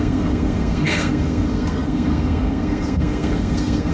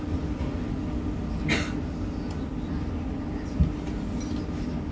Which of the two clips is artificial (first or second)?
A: first